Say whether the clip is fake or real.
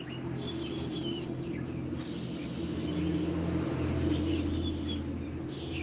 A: real